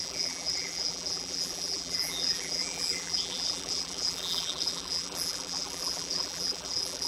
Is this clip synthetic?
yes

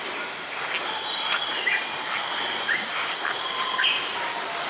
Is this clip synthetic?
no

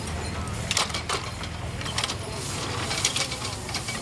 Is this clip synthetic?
no